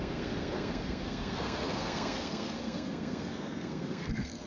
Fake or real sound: fake